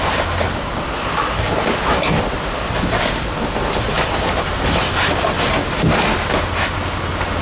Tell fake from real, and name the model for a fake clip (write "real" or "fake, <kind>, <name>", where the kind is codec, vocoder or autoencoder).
real